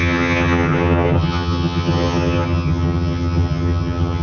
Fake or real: fake